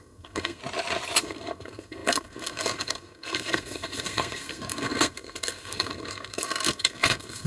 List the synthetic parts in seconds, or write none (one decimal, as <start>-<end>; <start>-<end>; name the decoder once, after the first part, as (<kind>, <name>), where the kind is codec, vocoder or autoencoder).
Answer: 0.0-0.6 (codec, SNAC); 1.2-7.5